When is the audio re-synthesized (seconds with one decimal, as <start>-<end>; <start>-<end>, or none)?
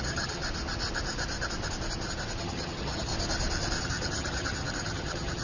0.0-0.4; 2.4-3.1; 3.8-5.4